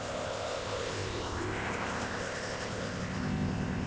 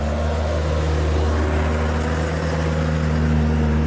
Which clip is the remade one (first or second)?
first